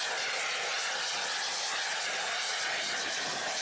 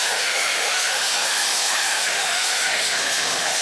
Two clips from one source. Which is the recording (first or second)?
first